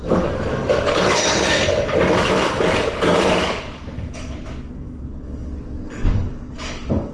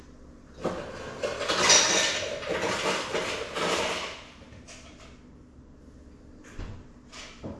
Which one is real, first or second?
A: second